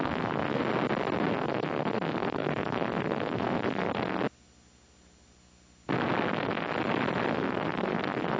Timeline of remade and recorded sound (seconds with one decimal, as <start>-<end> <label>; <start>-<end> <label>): 0.0-0.6 remade; 0.6-1.3 recorded; 1.3-4.2 remade; 4.2-6.3 recorded; 6.3-6.7 remade; 6.7-7.3 recorded; 7.3-8.4 remade